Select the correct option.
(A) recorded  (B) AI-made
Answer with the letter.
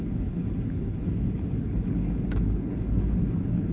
B